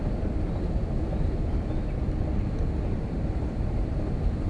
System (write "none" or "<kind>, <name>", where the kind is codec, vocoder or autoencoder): none